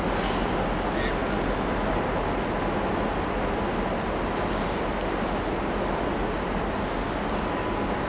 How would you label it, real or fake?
real